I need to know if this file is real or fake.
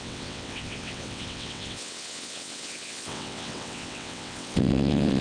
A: fake